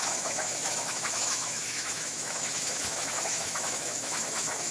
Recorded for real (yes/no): no